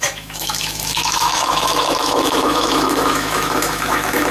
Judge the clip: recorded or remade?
remade